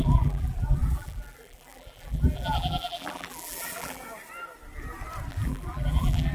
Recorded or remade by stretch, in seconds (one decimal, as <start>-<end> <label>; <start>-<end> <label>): 0.0-4.0 remade; 4.0-5.3 recorded; 5.3-6.3 remade